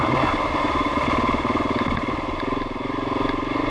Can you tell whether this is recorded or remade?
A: recorded